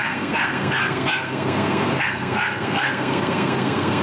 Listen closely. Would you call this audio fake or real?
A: fake